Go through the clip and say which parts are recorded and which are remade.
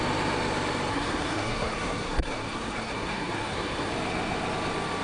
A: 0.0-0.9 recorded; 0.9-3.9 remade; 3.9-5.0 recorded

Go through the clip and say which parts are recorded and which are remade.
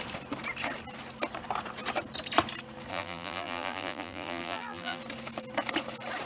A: 0.0-2.9 recorded; 2.9-5.0 remade; 5.0-6.3 recorded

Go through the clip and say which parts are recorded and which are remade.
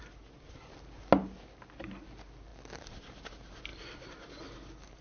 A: 0.0-5.0 recorded